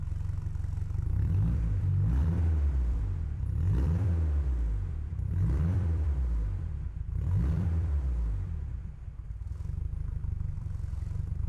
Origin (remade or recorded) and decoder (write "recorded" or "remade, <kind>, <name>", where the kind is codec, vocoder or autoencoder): remade, vocoder, BigVGAN v2